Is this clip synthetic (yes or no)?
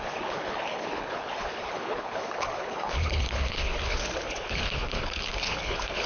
yes